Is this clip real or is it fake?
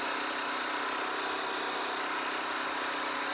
real